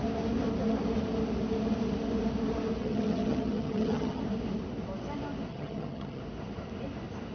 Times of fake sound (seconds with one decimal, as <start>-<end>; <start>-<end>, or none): 2.8-4.2; 5.5-6.2